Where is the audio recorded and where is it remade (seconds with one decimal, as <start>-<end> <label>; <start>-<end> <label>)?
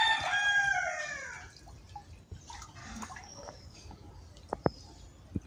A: 0.0-2.8 recorded; 2.8-4.1 remade; 4.1-5.5 recorded